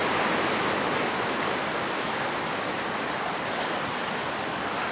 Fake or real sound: real